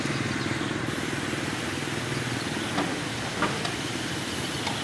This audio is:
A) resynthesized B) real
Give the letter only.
B